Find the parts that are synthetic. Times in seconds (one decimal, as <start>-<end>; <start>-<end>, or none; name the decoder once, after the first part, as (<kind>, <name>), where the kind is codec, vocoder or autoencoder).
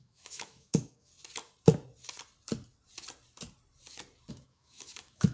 0.0-1.1 (autoencoder, DAC-VAE); 4.3-5.3